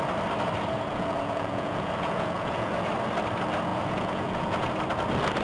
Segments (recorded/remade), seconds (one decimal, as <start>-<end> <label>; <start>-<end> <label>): 0.0-0.9 recorded; 0.9-2.9 remade; 2.9-3.7 recorded; 3.7-4.7 remade; 4.7-5.4 recorded